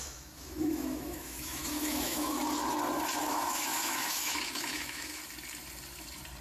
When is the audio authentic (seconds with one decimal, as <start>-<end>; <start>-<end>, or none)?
2.4-3.2; 5.2-6.4